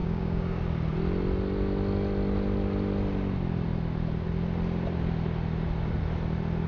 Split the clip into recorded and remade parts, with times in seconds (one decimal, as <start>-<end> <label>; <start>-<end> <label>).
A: 0.0-0.6 remade; 0.6-6.7 recorded